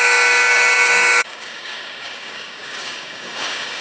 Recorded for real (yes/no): no